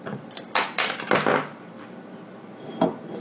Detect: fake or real real